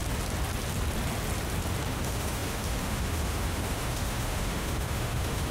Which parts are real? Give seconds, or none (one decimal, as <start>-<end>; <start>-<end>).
0.0-1.9